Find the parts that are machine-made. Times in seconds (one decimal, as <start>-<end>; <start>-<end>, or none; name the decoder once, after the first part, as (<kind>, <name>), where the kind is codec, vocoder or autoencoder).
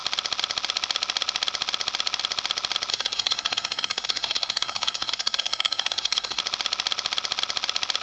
2.9-6.4 (codec, SNAC)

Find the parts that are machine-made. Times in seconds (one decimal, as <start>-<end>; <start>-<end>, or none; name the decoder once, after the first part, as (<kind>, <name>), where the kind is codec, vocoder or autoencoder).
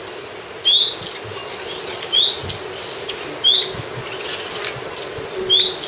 none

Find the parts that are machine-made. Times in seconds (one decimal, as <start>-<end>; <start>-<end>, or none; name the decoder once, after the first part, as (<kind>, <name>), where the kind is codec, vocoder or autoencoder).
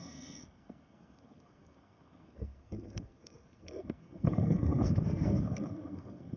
0.0-6.4 (codec, SNAC)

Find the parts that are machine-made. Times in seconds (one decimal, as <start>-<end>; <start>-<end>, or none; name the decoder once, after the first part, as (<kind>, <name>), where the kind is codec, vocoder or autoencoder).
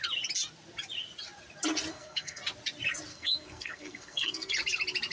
1.9-2.4 (codec, SNAC); 3.1-4.5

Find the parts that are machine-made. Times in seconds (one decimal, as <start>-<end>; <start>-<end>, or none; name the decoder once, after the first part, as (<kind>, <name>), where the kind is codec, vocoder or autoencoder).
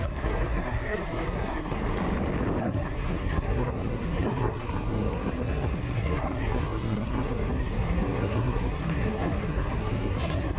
0.0-1.8 (codec, SNAC); 2.6-10.6